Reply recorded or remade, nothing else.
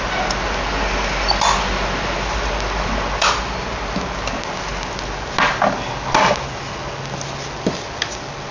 recorded